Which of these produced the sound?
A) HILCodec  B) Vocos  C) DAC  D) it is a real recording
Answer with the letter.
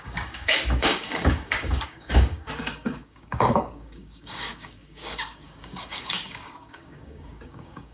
C